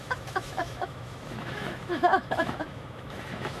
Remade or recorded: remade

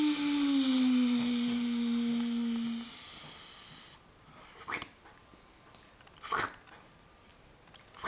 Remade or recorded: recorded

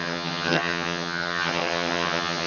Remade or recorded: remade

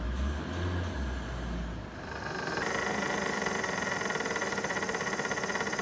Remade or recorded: recorded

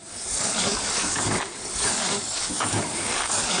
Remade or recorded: remade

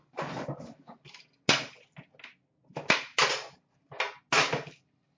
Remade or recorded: recorded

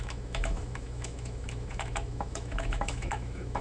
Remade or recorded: remade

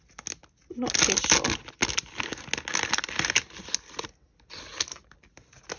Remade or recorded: recorded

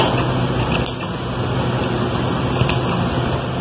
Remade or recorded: recorded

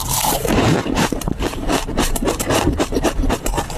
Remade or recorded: remade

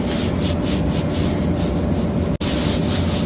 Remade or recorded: recorded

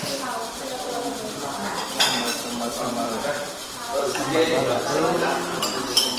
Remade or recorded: remade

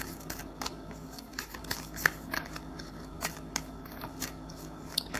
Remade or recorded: remade